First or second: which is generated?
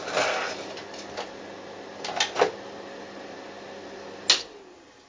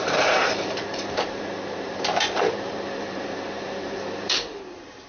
second